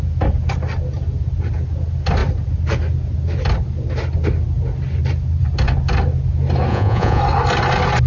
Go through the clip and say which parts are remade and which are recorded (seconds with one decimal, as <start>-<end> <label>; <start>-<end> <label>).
0.0-6.7 recorded; 6.7-7.2 remade; 7.2-8.1 recorded